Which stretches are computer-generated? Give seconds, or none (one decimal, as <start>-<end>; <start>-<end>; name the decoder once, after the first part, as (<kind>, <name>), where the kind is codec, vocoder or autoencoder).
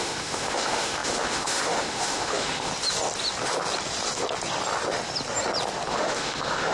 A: 0.0-2.7 (autoencoder, DAC-VAE); 5.9-6.7